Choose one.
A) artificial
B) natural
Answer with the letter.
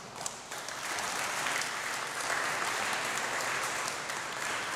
A